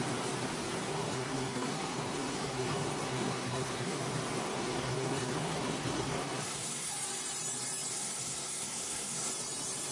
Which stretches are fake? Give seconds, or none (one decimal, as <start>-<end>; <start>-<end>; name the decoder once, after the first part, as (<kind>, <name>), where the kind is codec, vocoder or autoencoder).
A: 0.9-4.0 (codec, SNAC); 4.4-6.9; 7.9-9.3

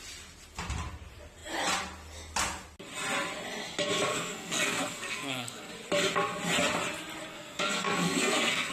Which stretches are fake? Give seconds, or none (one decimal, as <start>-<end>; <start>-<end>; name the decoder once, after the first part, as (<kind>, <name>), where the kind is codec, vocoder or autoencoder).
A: 4.1-5.7 (codec, SNAC); 7.3-8.7

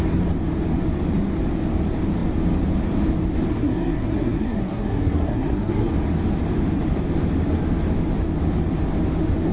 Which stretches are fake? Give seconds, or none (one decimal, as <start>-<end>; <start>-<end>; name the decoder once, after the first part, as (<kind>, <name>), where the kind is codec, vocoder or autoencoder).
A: 3.5-5.9 (codec, SNAC)

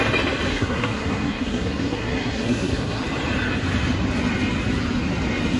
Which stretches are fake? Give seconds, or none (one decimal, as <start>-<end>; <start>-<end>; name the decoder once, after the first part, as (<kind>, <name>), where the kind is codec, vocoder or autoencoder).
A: 0.5-3.0 (codec, SNAC)

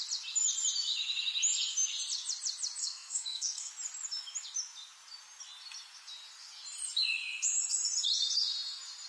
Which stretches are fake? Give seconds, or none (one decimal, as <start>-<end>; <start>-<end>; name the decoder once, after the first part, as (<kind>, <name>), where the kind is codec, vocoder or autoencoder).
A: 2.8-3.7 (codec, SNAC)

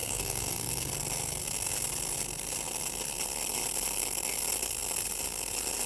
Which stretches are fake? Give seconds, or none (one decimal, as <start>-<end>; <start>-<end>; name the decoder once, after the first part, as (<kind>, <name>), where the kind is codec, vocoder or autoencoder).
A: 0.0-0.9 (codec, SNAC)

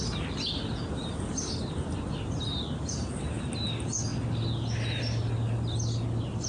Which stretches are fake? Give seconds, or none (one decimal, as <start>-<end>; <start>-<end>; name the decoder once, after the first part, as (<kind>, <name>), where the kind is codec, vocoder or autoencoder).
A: none

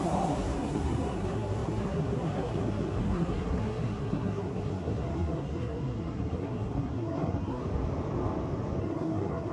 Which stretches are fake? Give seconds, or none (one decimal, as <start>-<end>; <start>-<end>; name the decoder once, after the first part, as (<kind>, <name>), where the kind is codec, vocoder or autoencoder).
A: 0.0-7.6 (codec, SNAC); 8.8-9.5